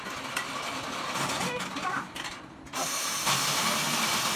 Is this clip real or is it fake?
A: real